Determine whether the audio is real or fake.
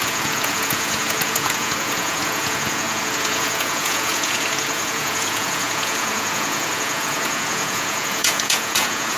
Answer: fake